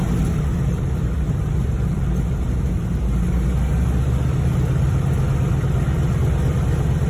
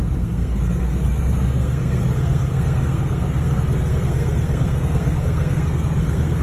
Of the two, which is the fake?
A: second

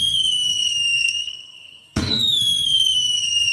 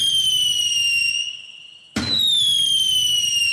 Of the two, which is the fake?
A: first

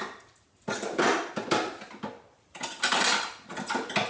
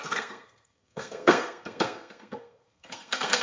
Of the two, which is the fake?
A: second